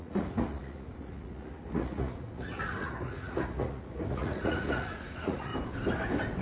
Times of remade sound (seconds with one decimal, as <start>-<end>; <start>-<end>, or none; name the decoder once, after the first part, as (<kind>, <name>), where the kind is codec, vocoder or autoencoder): 0.0-5.5 (vocoder, Vocos)